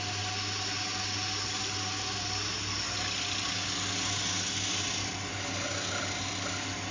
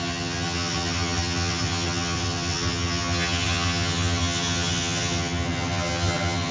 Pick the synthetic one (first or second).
second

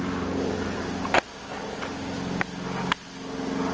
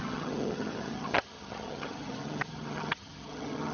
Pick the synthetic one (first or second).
second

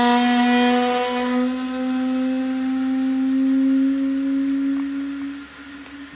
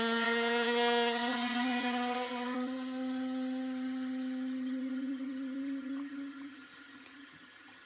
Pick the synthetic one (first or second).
second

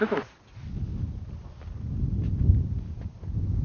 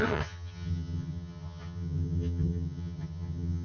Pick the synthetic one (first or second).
second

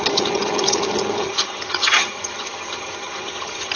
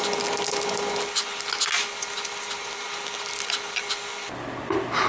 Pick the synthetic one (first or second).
first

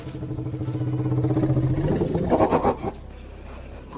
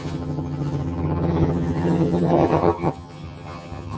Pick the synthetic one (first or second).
second